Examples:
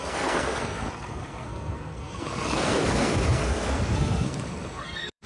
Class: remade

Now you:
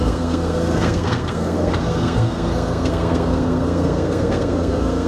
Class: remade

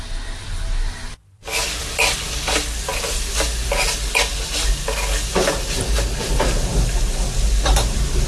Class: recorded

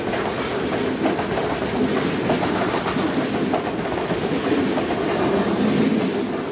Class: recorded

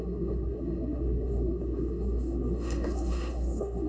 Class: remade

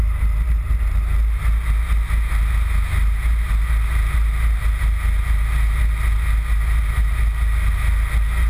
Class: recorded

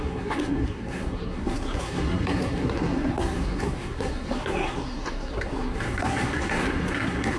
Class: remade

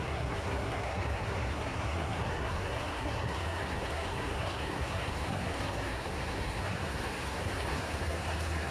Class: remade